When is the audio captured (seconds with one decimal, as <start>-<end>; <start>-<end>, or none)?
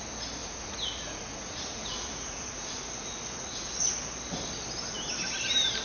0.0-0.4; 3.9-5.8